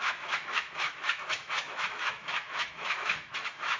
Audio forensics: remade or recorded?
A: remade